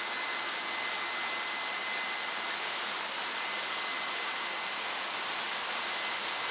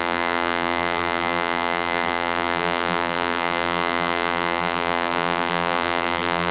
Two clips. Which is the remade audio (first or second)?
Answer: second